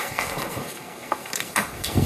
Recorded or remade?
remade